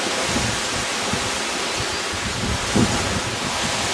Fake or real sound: real